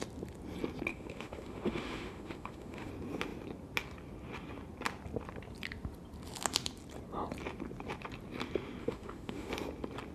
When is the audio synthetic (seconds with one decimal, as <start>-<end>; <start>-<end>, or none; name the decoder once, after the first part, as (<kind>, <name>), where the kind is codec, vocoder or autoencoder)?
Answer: 0.9-2.9 (autoencoder, DAC-VAE); 8.8-9.5